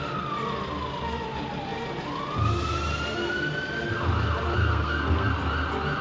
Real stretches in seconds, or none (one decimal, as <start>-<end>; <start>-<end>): 0.0-4.6; 5.3-6.0